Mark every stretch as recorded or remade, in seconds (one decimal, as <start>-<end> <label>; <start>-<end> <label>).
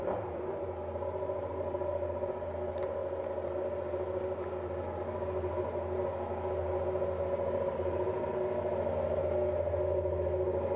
0.0-10.8 recorded